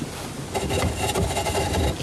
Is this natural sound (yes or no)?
yes